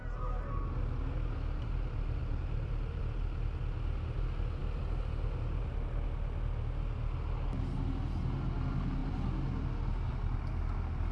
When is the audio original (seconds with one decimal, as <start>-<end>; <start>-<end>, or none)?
0.0-2.2; 3.0-11.1